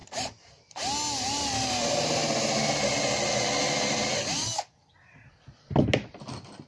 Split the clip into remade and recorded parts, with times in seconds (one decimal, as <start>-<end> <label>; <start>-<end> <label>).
0.0-6.7 recorded